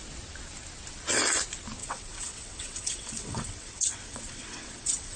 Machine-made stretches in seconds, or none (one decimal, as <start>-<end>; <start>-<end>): 1.8-5.2